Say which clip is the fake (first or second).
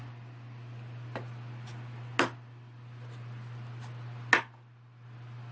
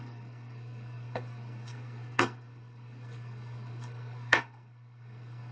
second